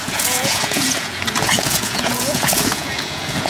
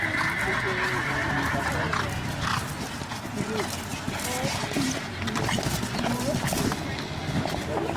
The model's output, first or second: first